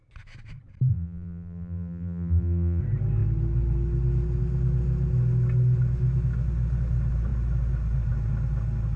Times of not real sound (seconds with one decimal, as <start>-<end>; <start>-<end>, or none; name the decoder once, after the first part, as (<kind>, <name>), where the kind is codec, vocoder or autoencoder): 0.9-2.8 (vocoder, BigVGAN v2)